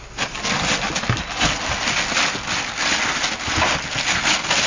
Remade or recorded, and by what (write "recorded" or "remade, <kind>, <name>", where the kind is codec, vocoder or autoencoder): recorded